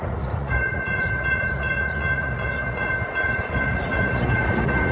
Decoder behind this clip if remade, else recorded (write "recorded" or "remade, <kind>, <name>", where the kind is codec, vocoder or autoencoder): remade, vocoder, Vocos